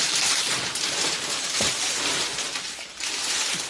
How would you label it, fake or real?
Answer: fake